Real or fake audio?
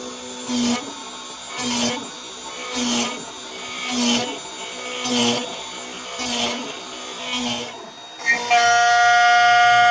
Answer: real